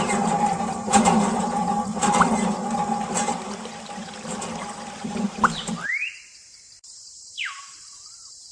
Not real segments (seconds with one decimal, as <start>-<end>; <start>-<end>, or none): 0.0-1.9; 5.0-8.5